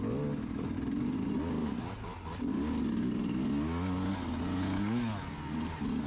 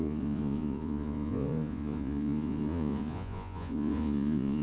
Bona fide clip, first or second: first